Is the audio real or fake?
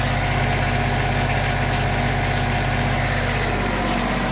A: real